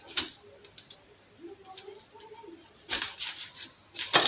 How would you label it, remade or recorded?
recorded